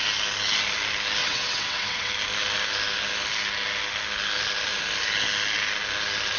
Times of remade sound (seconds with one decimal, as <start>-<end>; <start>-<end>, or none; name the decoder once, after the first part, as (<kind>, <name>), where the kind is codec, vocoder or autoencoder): 1.2-2.1 (vocoder, WaveNeXt)